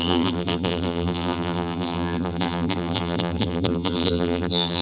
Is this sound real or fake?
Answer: fake